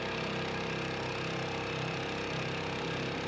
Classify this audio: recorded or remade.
recorded